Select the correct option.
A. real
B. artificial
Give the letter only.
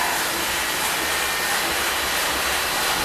A